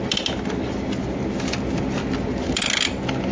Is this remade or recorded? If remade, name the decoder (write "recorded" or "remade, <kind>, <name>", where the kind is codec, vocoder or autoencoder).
recorded